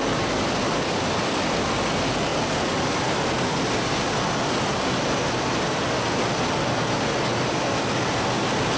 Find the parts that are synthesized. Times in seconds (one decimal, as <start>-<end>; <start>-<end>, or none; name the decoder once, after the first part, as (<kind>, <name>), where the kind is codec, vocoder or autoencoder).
none